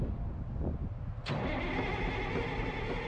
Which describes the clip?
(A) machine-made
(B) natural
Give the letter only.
B